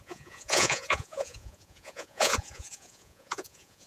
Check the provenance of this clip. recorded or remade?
remade